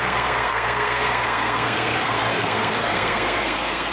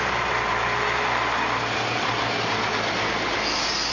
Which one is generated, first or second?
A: first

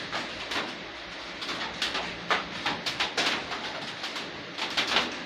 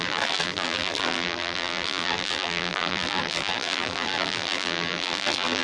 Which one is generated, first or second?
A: second